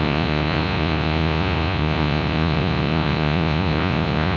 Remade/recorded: remade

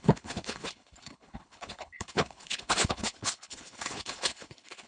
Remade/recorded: remade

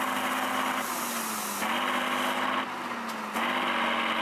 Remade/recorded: recorded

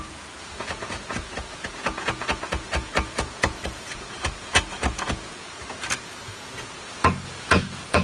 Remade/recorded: remade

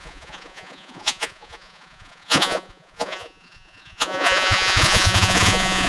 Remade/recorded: remade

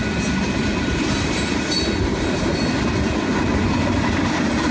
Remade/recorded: recorded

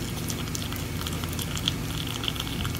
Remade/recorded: recorded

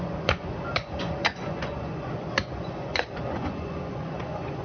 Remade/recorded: remade